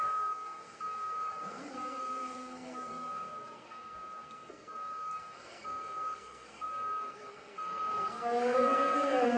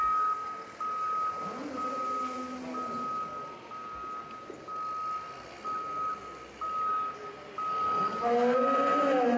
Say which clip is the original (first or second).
second